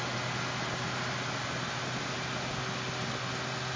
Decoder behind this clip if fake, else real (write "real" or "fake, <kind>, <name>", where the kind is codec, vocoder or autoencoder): real